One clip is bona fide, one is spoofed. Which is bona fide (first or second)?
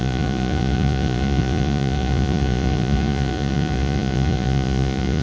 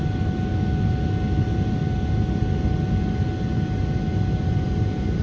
second